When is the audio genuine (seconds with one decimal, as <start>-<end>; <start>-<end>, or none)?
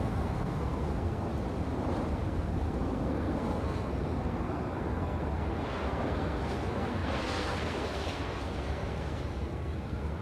1.3-2.1